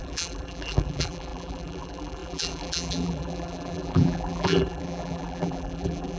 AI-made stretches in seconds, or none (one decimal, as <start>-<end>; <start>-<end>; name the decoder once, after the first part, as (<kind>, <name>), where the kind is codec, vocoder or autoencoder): 0.0-6.2 (vocoder, BigVGAN v2)